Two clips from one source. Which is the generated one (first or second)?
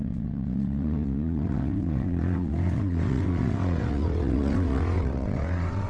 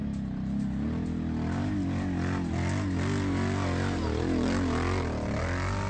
first